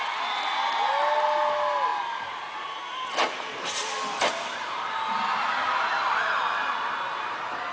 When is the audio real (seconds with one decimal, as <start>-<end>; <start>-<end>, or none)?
0.0-3.8; 5.7-7.7